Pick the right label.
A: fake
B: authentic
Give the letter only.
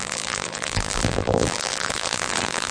A